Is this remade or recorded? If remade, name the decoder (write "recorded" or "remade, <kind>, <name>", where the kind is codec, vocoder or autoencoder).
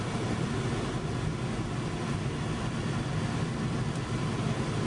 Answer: recorded